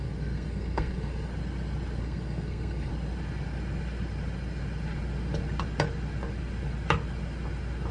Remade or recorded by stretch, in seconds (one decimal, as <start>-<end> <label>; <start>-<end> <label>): 0.0-1.3 remade; 1.3-2.0 recorded; 2.0-2.9 remade; 2.9-7.9 recorded